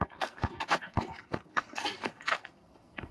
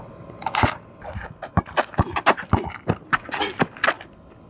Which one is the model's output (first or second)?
first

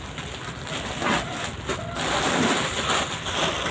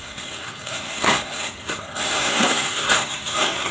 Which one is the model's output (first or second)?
second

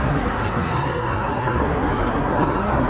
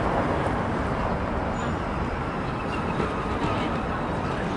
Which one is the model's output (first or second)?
first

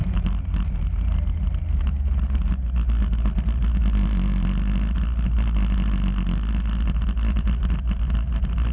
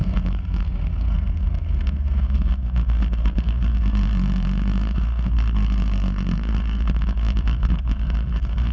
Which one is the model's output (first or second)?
second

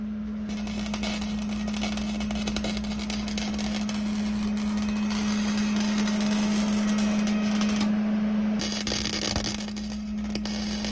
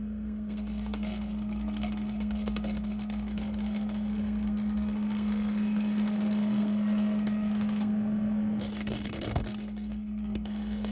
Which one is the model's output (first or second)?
second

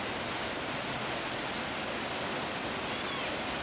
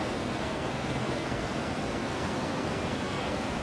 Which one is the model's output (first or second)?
second